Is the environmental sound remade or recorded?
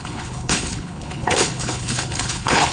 remade